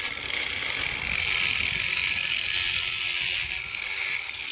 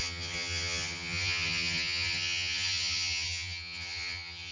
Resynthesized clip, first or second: second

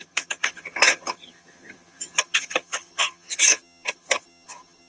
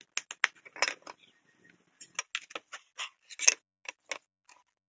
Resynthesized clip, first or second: first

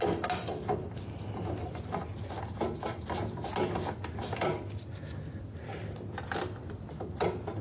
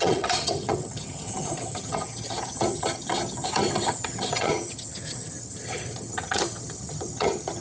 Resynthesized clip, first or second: second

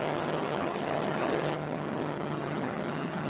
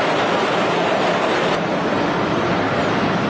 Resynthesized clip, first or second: first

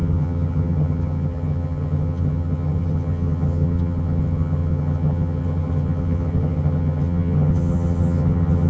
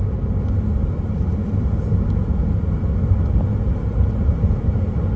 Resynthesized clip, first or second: first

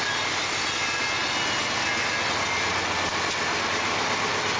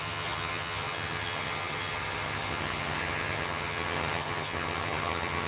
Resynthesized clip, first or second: second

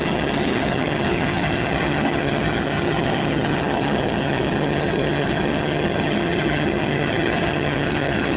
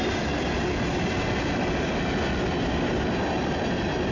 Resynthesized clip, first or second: first